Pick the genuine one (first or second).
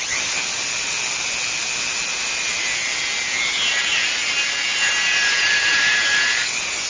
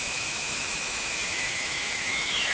first